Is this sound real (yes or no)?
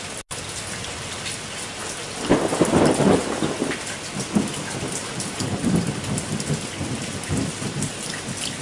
yes